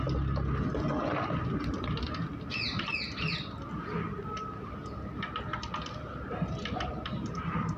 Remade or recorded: recorded